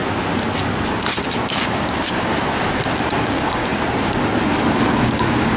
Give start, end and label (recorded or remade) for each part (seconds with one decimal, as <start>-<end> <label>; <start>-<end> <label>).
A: 0.0-1.3 recorded; 1.3-2.3 remade; 2.3-3.2 recorded; 3.2-3.7 remade; 3.7-4.9 recorded; 4.9-5.6 remade